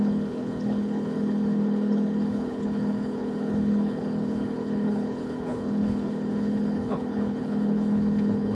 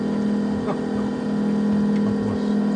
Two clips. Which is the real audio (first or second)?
second